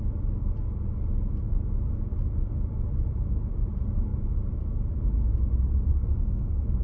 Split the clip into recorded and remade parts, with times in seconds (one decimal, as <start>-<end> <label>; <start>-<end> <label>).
0.0-5.9 recorded; 5.9-6.8 remade